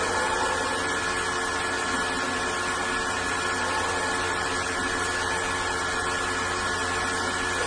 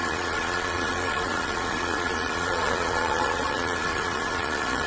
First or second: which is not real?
second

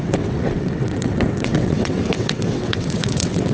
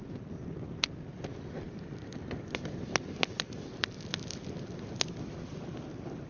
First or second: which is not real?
first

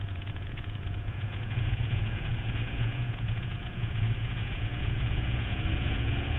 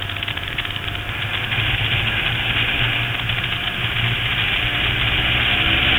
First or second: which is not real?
first